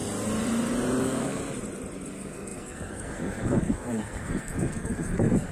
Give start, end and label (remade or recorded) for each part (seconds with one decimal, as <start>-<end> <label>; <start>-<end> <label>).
0.0-1.0 recorded; 1.0-1.4 remade; 1.4-2.1 recorded; 2.1-5.5 remade